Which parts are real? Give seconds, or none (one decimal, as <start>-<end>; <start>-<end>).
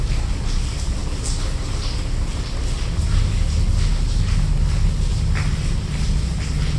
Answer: 0.0-6.8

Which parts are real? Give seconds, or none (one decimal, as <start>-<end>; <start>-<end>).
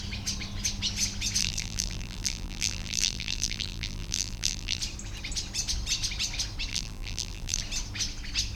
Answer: 0.0-1.4; 4.8-6.7; 7.6-8.5